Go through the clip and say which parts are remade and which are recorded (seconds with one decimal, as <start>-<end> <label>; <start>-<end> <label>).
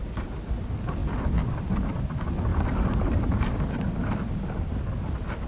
0.0-5.5 recorded